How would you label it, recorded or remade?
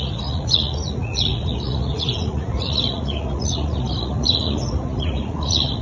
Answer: remade